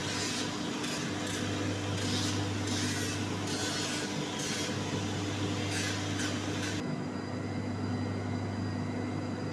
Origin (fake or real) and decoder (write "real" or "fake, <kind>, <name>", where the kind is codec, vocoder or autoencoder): real